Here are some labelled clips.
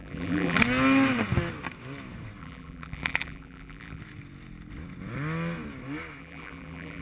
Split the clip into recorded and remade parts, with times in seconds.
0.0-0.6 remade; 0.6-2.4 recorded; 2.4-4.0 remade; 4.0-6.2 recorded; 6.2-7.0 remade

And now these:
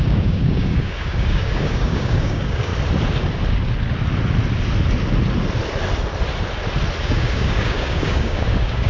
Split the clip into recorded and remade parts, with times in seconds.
0.0-2.7 remade; 2.7-7.0 recorded; 7.0-8.9 remade

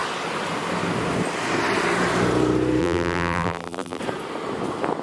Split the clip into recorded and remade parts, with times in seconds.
0.0-2.8 recorded; 2.8-4.0 remade; 4.0-5.0 recorded

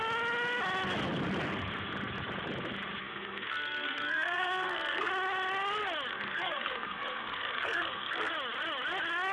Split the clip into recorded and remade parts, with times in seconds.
0.0-3.0 recorded; 3.0-5.1 remade; 5.1-6.1 recorded; 6.1-8.3 remade; 8.3-9.3 recorded

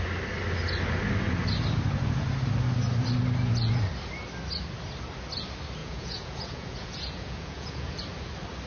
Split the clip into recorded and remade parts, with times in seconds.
0.0-5.8 recorded; 5.8-8.0 remade; 8.0-8.7 recorded

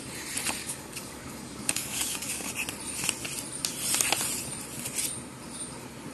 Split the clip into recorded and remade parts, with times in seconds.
0.0-0.6 recorded; 0.6-2.5 remade; 2.5-6.1 recorded

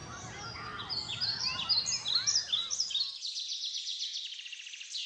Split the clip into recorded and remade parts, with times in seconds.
0.0-5.1 recorded

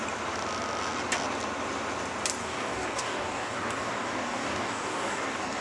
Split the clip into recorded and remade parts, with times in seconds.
0.0-2.4 recorded; 2.4-5.6 remade